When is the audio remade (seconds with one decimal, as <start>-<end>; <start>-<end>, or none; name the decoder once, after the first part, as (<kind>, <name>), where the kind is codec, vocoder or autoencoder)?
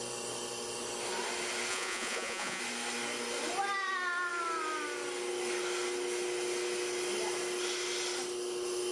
1.7-2.6 (vocoder, Vocos)